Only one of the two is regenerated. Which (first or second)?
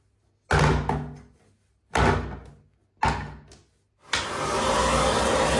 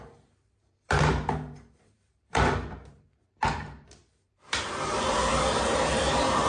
second